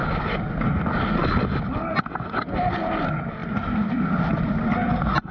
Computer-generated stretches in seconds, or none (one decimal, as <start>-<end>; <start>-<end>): none